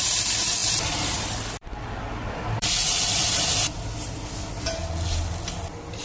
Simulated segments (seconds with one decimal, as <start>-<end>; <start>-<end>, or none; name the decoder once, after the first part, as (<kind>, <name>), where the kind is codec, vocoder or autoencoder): 0.6-4.1 (vocoder, BigVGAN v2); 4.8-5.3